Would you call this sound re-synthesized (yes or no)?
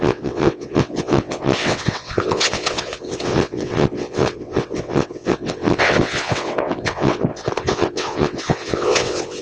yes